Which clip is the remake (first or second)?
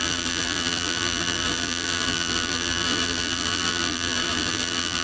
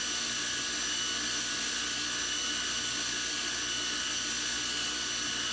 first